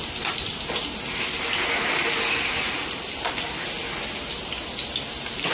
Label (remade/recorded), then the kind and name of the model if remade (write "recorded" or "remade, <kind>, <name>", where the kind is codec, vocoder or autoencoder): recorded